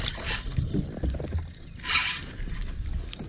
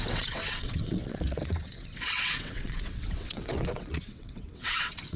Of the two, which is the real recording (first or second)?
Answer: first